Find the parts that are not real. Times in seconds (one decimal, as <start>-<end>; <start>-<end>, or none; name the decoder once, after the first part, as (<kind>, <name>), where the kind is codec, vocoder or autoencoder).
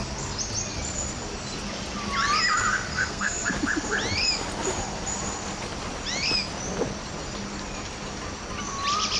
2.9-3.5 (codec, SNAC)